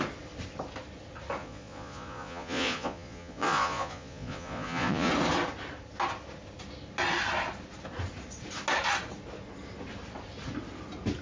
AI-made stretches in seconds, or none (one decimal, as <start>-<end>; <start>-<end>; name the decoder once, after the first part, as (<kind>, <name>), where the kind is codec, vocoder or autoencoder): 1.4-5.1 (vocoder, Vocos)